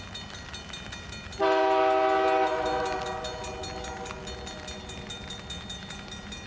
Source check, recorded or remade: recorded